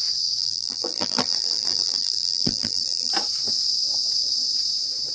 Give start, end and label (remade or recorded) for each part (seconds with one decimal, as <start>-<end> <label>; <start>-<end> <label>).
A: 0.0-0.4 recorded; 0.4-3.1 remade; 3.1-5.1 recorded